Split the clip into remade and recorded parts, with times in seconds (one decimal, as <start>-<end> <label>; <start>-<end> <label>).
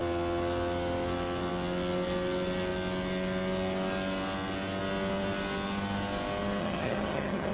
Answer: 0.0-6.6 recorded; 6.6-7.5 remade